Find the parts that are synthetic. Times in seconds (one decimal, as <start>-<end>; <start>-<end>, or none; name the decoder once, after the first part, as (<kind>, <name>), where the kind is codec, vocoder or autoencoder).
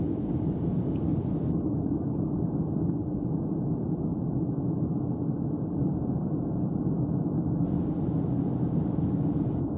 4.1-7.5 (vocoder, BigVGAN v2)